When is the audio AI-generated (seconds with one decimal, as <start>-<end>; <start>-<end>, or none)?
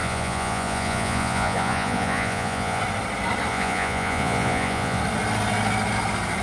0.0-2.8; 3.5-5.0